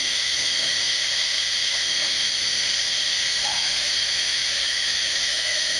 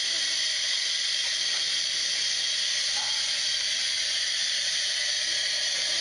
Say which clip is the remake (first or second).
first